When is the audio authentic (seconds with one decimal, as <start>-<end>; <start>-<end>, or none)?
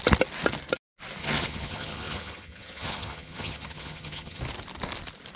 0.0-1.2; 4.4-5.4